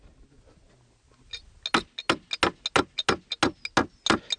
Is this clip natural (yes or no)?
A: yes